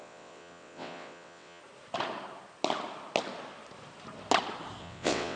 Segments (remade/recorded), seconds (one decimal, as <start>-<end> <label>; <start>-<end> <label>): 0.0-1.6 remade; 1.6-4.8 recorded; 4.8-5.4 remade